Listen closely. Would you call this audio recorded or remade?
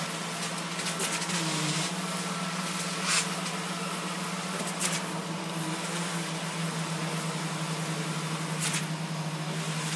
recorded